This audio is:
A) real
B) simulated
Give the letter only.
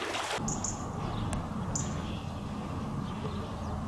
A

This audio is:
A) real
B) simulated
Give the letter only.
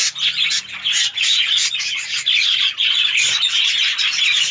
A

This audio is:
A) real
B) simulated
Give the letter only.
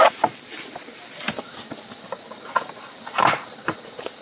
B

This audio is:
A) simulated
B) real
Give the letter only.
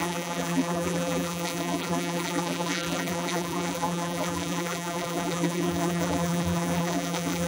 A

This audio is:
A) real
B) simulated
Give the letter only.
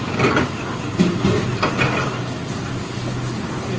A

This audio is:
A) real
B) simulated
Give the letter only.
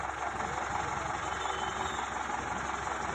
A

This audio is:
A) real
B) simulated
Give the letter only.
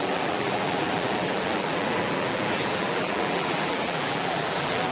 B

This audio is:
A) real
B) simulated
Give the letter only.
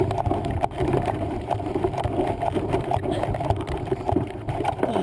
B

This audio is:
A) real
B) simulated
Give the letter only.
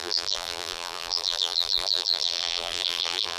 B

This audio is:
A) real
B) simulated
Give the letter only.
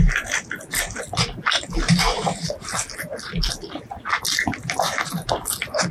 A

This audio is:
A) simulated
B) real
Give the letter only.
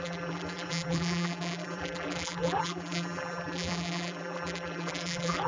A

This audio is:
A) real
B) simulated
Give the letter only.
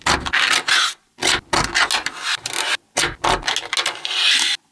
A